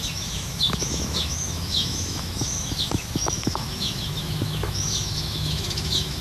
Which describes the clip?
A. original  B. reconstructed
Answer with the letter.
B